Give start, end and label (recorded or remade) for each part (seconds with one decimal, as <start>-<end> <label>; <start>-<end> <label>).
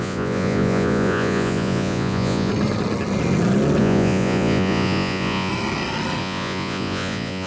0.0-2.5 remade; 2.5-3.8 recorded; 3.8-5.5 remade; 5.5-6.2 recorded; 6.2-7.5 remade